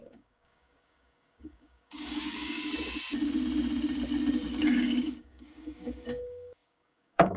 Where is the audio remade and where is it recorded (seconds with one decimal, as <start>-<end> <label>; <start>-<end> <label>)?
0.0-2.7 remade; 2.7-4.6 recorded; 4.6-7.4 remade